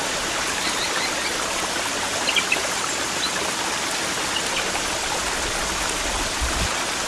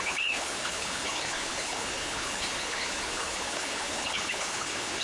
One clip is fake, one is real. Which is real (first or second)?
first